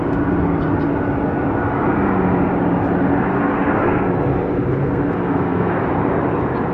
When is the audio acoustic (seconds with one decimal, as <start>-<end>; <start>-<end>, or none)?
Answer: 0.0-3.3; 4.0-4.8; 5.7-6.7

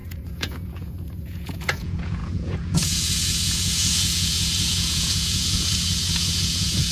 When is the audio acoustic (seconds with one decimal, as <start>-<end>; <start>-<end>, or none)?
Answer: none